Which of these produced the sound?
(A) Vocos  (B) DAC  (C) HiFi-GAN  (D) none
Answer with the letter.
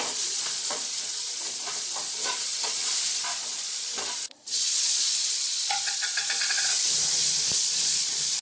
A